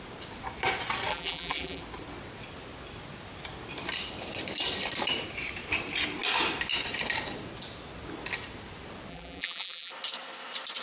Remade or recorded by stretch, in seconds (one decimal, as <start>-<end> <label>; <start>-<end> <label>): 0.0-1.1 recorded; 1.1-1.8 remade; 1.8-9.1 recorded; 9.1-9.9 remade; 9.9-10.8 recorded